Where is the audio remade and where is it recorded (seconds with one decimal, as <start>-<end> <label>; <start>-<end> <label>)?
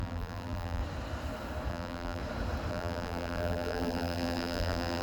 0.0-0.8 remade; 0.8-1.7 recorded; 1.7-2.2 remade; 2.2-2.7 recorded; 2.7-5.0 remade